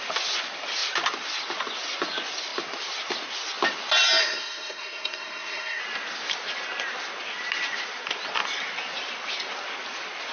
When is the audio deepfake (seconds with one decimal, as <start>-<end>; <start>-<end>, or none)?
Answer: 4.2-5.8